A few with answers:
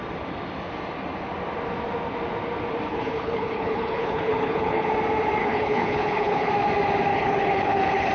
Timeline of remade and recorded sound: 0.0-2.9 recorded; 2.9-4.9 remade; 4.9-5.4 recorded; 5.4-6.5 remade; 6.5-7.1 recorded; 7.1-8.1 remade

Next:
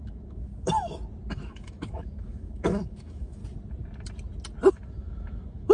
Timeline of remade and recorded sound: 0.0-0.5 remade; 0.5-1.3 recorded; 1.3-3.4 remade; 3.4-4.7 recorded; 4.7-5.7 remade

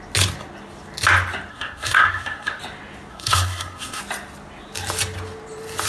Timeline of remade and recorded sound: 0.0-1.5 recorded; 1.5-2.6 remade; 2.6-3.1 recorded; 3.1-4.0 remade; 4.0-5.9 recorded

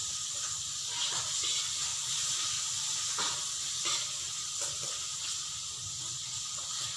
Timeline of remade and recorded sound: 0.0-1.3 remade; 1.3-1.9 recorded; 1.9-2.5 remade; 2.5-5.1 recorded; 5.1-5.9 remade; 5.9-7.0 recorded